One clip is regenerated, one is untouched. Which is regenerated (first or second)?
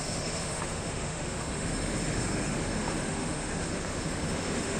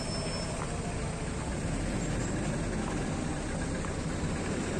first